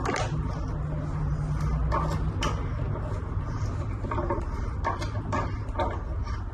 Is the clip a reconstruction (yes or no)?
no